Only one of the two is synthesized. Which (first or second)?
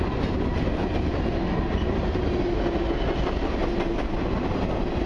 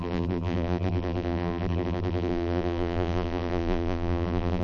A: second